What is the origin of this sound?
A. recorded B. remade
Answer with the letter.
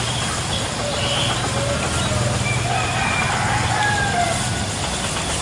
A